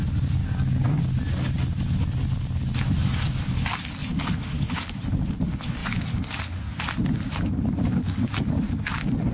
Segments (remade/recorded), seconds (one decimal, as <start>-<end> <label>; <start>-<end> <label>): 0.0-0.4 recorded; 0.4-1.2 remade; 1.2-9.3 recorded